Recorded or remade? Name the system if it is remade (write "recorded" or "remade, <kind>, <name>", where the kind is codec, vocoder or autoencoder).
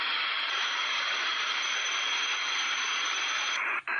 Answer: remade, vocoder, BigVGAN v2